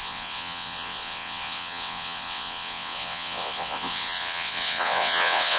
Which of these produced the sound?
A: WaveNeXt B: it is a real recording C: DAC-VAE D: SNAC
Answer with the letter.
A